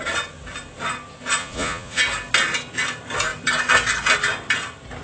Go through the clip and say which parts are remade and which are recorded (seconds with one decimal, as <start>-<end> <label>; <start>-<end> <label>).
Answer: 0.0-1.4 recorded; 1.4-2.0 remade; 2.0-5.0 recorded